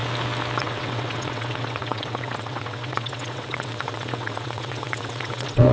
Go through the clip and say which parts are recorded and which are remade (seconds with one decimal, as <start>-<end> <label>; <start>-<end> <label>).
0.0-0.6 recorded; 0.6-5.7 remade